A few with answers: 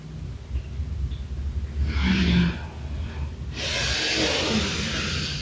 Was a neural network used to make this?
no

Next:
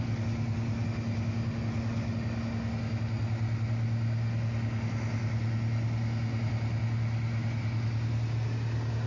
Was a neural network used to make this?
no